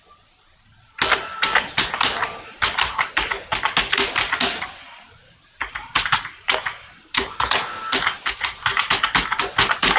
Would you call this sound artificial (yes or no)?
no